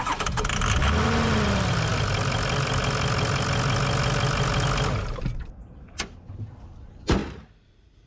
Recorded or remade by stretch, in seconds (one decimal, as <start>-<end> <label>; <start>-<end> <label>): 0.0-7.2 recorded; 7.2-8.1 remade